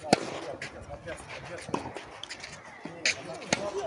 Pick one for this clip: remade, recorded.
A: recorded